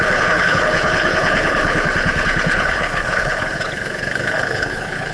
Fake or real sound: fake